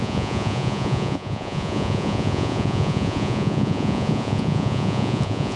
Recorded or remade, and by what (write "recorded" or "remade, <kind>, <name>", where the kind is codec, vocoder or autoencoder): remade, vocoder, Vocos